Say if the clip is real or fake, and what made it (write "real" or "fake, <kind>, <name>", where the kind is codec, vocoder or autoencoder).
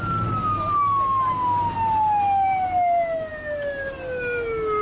real